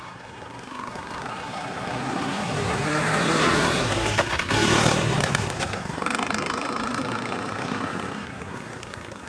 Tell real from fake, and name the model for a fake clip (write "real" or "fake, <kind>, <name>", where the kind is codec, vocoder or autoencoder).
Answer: fake, codec, SNAC